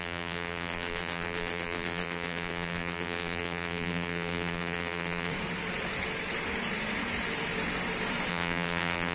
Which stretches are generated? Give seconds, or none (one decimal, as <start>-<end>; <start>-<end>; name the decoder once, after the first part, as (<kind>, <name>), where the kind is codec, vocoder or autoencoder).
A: 0.0-5.3 (vocoder, BigVGAN v2); 8.3-9.1